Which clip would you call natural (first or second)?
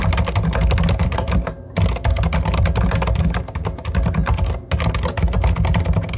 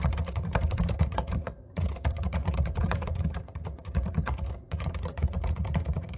first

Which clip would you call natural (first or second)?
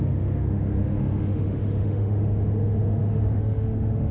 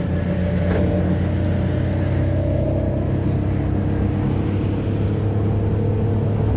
second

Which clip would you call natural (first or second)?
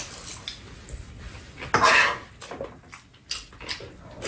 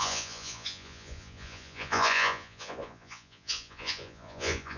first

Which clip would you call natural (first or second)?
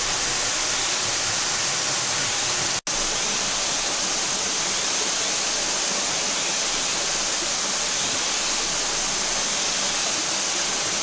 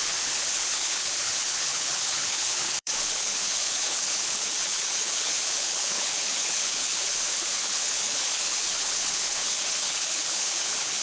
first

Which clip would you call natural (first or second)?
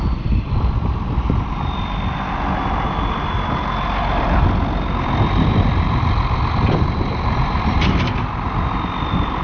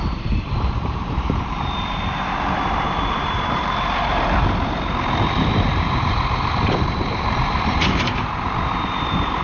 first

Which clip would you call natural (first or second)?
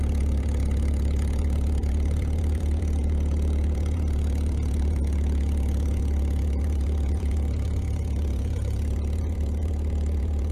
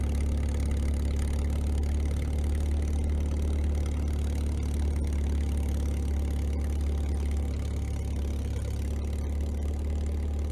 second